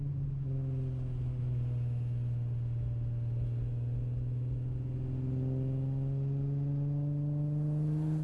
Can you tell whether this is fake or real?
real